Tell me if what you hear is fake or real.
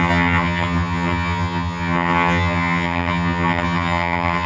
fake